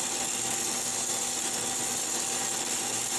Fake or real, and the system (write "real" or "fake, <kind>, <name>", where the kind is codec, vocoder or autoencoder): real